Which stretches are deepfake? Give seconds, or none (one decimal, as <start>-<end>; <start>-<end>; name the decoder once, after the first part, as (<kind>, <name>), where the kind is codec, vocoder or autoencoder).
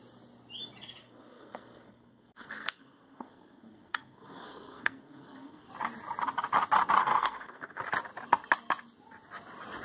1.0-5.7 (codec, SNAC); 7.0-7.8